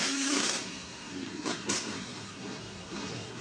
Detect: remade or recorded remade